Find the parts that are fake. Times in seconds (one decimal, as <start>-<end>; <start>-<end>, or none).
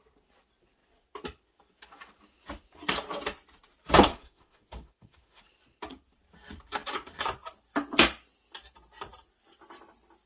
4.1-5.4